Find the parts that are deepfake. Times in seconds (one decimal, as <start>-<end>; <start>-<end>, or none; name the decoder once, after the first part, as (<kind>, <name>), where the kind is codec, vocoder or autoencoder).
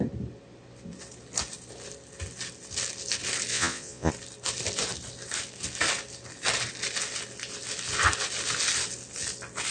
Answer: 3.5-4.1 (vocoder, Vocos)